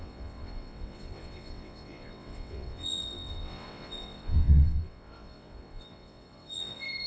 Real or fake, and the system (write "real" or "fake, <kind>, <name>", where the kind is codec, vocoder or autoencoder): fake, vocoder, WaveNeXt